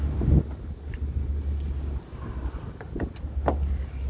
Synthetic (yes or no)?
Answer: no